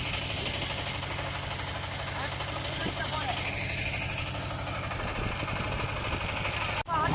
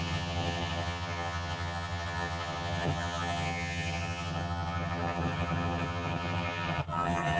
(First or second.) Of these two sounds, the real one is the first